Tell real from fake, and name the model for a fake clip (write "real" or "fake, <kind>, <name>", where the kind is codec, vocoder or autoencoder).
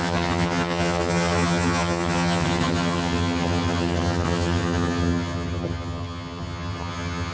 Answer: fake, vocoder, HiFi-GAN